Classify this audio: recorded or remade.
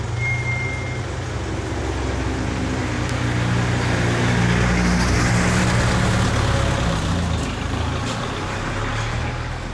recorded